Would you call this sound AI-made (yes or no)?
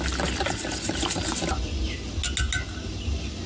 no